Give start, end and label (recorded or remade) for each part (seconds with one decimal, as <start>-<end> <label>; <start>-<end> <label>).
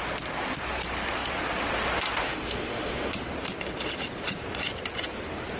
0.0-2.2 recorded; 2.2-3.1 remade; 3.1-5.6 recorded